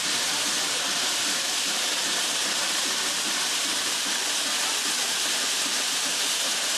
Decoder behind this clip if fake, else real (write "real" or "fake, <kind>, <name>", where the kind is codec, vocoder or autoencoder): fake, vocoder, BigVGAN v2